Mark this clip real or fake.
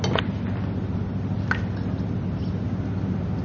real